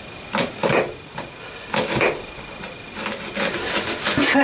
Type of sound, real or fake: real